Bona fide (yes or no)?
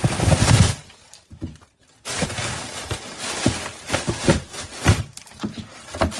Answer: yes